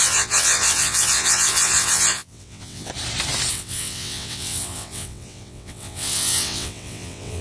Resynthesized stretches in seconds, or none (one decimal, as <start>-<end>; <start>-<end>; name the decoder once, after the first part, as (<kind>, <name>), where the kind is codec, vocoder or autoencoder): 0.0-2.9 (vocoder, WaveNeXt); 3.5-7.4